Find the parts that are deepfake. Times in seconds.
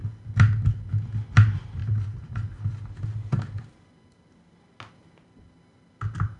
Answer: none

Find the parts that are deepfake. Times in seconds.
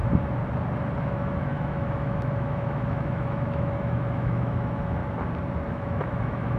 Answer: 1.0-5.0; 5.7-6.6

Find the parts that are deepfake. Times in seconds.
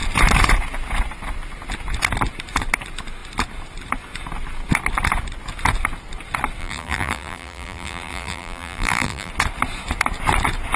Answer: 6.6-9.3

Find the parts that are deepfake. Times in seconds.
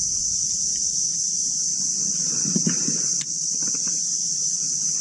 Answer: 0.4-1.0; 1.7-5.0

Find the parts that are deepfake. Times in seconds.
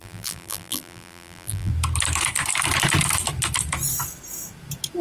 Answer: 0.0-1.7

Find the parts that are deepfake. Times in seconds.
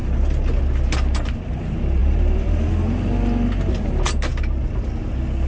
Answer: 2.0-2.7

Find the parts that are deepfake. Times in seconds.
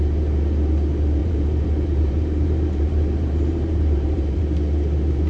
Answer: 1.2-4.4